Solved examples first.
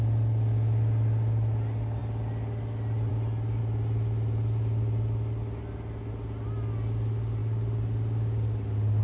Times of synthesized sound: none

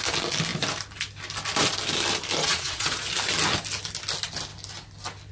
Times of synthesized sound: 2.4-3.1

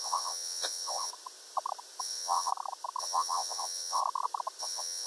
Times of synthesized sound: 0.0-1.1; 2.0-2.5; 3.0-4.0; 4.6-5.1

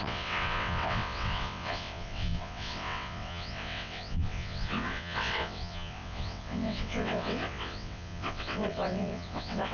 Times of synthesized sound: 0.0-9.7

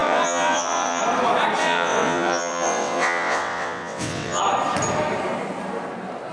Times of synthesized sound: 0.0-1.0; 1.6-4.4

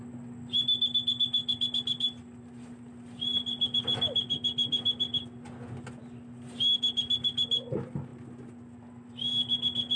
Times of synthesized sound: none

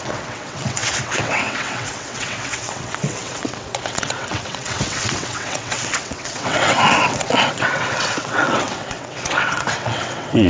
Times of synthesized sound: 0.0-10.5

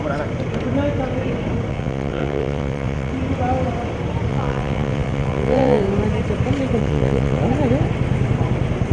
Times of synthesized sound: 1.7-3.1; 4.3-5.8; 6.8-7.4